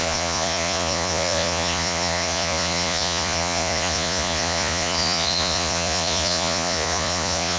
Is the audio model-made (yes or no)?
yes